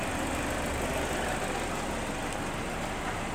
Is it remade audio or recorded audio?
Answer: recorded